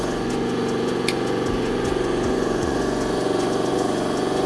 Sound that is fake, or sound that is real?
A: fake